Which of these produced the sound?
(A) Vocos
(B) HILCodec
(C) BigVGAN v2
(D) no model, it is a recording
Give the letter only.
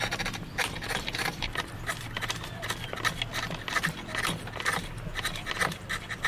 D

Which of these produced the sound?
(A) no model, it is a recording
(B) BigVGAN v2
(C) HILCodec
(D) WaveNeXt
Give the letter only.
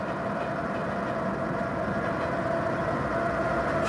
A